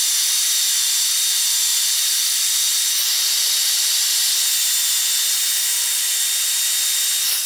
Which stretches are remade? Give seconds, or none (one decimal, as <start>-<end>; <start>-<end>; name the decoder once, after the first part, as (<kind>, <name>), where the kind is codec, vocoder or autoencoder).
none